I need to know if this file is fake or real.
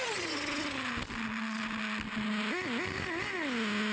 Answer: real